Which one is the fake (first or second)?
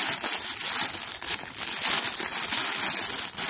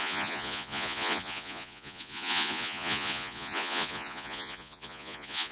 second